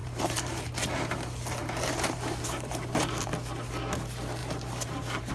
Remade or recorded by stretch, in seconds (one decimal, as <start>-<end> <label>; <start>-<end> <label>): 0.0-0.6 remade; 0.6-1.6 recorded; 1.6-3.3 remade; 3.3-4.4 recorded; 4.4-5.3 remade